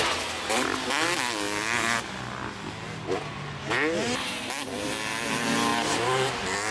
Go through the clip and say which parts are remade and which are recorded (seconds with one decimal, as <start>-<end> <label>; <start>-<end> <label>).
0.0-6.7 recorded